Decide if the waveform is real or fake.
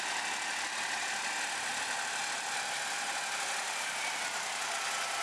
real